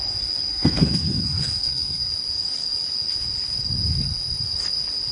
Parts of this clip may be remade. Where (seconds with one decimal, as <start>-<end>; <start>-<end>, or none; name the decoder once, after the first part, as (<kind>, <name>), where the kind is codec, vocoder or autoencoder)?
0.5-2.1 (codec, SNAC)